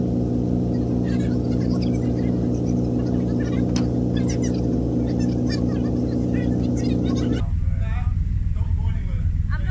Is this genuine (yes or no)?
yes